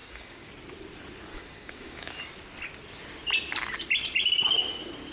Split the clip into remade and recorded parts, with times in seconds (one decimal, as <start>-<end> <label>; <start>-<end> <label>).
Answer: 0.0-0.5 remade; 0.5-1.3 recorded; 1.3-2.3 remade; 2.3-5.1 recorded